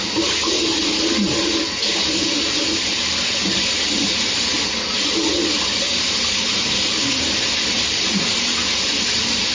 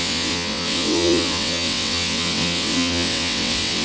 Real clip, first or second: first